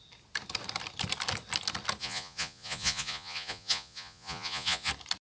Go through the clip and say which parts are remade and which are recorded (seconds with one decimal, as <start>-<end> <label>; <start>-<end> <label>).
0.0-2.0 recorded; 2.0-4.9 remade; 4.9-5.4 recorded